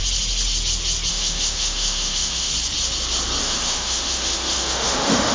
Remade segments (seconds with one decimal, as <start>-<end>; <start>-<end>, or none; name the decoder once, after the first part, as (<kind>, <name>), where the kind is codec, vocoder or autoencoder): 1.1-2.5 (autoencoder, DAC-VAE); 3.4-5.3